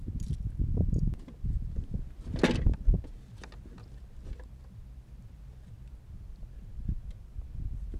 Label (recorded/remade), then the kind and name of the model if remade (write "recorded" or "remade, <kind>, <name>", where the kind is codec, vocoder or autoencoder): recorded